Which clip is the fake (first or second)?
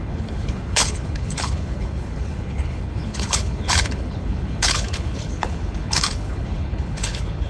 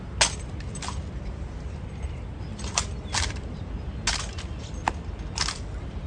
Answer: first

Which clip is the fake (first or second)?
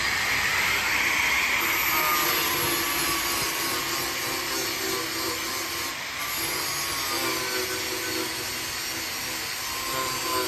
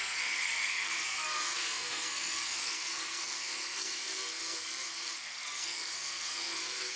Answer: second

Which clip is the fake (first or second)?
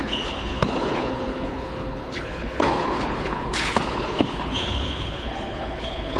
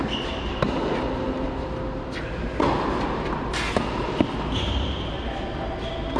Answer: first